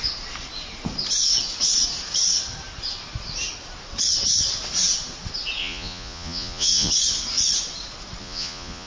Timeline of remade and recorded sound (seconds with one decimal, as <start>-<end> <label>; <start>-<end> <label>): 0.0-5.6 recorded; 5.6-6.9 remade; 6.9-8.2 recorded; 8.2-8.9 remade